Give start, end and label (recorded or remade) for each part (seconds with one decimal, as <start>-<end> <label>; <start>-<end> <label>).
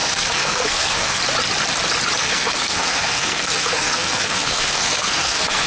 0.0-1.2 remade; 1.2-2.2 recorded; 2.2-5.7 remade